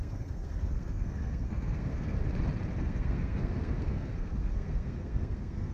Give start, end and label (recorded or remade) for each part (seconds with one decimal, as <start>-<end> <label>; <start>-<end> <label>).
0.0-2.2 remade; 2.2-2.8 recorded; 2.8-5.7 remade